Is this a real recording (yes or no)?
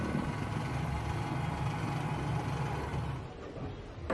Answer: yes